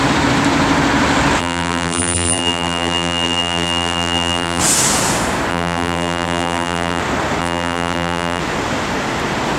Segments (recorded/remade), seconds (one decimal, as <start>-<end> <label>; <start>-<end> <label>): 0.0-1.4 recorded; 1.4-4.6 remade; 4.6-5.5 recorded; 5.5-7.0 remade; 7.0-7.4 recorded; 7.4-8.4 remade; 8.4-9.6 recorded